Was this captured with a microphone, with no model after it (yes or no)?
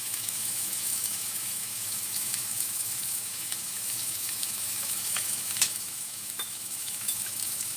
no